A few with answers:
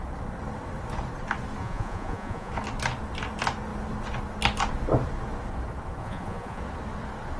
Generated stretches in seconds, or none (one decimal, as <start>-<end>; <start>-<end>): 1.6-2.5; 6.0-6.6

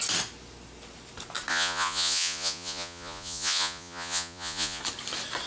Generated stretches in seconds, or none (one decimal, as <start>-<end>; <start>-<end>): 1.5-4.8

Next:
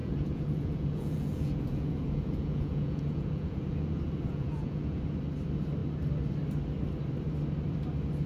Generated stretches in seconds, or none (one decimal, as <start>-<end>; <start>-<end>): 0.0-5.0

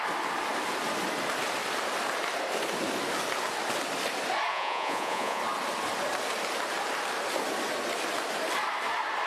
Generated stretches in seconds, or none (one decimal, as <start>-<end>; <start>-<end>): 4.5-5.4

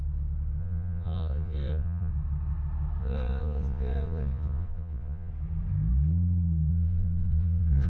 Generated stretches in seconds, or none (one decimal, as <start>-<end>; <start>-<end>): 0.6-2.1; 3.0-5.3; 6.7-7.9